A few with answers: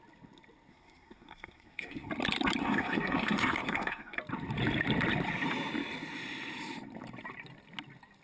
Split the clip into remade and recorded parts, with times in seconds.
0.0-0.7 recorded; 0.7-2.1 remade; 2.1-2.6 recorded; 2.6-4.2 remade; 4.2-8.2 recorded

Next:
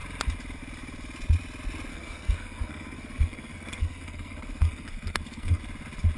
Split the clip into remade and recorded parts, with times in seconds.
0.0-1.9 recorded; 1.9-5.6 remade; 5.6-6.2 recorded

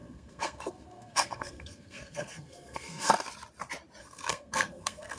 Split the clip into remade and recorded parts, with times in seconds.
0.0-3.1 remade; 3.1-4.0 recorded; 4.0-5.2 remade